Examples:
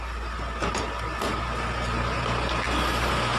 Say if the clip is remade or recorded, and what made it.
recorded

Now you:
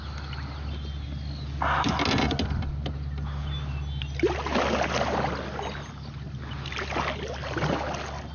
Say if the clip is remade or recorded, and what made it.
recorded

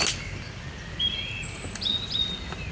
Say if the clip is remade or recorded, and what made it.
recorded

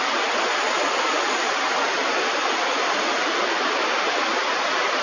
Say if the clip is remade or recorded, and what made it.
recorded